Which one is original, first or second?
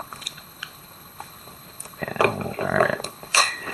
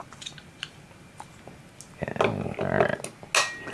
second